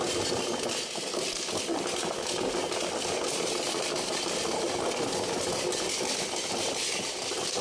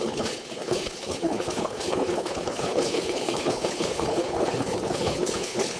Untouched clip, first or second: first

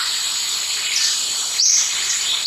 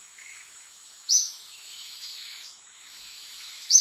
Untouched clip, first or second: first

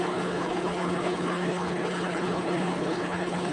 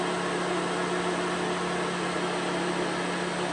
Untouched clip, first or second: second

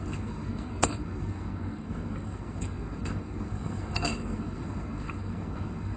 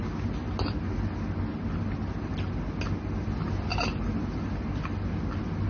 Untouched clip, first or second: second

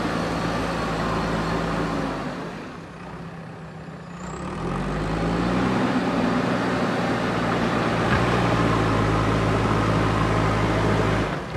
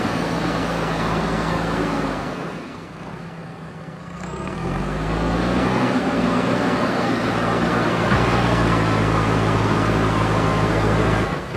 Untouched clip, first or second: first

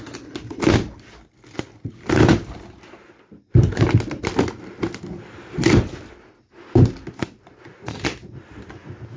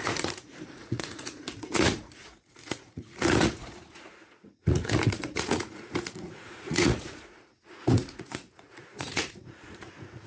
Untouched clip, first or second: first